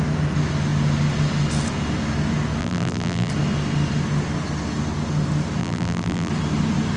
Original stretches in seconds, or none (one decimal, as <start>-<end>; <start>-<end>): 0.0-2.6; 3.3-5.6; 6.3-7.0